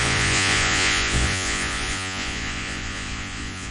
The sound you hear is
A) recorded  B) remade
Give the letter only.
B